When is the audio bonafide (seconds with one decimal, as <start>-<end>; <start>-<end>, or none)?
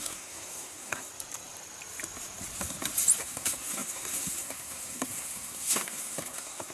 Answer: 1.1-3.2